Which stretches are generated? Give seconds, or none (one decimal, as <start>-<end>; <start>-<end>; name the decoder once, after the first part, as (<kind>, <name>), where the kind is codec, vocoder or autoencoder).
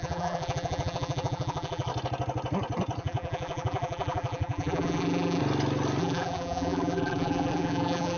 0.0-1.9 (vocoder, BigVGAN v2); 3.0-5.4; 6.0-8.2